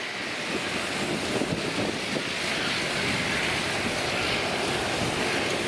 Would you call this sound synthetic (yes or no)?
no